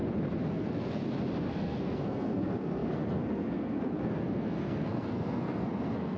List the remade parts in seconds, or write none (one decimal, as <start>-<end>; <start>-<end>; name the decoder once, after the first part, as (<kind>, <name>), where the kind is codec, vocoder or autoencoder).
0.5-1.0 (codec, SNAC); 1.5-6.2